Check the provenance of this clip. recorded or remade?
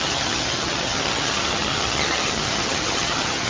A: remade